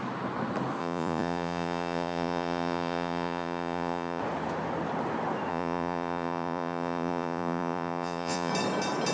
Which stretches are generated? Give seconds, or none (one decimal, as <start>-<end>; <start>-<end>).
0.8-4.2; 5.5-8.5